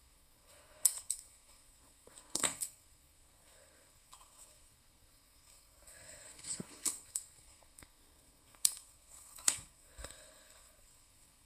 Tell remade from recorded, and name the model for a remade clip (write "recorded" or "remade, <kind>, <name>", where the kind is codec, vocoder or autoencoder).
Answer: remade, codec, SNAC